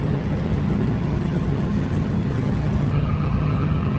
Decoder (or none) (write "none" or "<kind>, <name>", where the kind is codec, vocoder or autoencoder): vocoder, HiFi-GAN